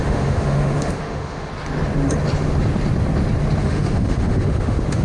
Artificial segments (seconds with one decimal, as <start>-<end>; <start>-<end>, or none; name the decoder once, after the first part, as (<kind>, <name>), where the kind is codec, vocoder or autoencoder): 0.0-1.5 (autoencoder, DAC-VAE); 3.6-5.0